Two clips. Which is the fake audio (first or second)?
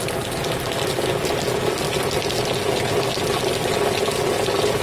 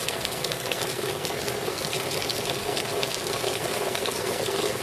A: second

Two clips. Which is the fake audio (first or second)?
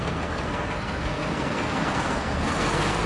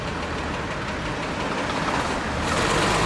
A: first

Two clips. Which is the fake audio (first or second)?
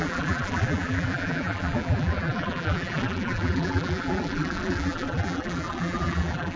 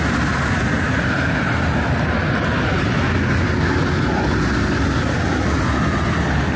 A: first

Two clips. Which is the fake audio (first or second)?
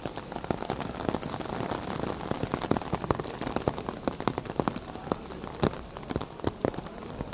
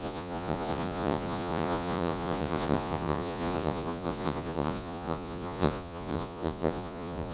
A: second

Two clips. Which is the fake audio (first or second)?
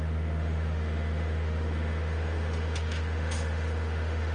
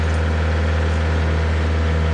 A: first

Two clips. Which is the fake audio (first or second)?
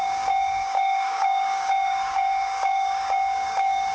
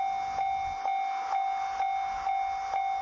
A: first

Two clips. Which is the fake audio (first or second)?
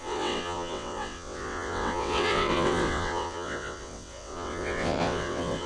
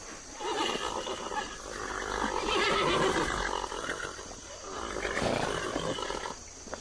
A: first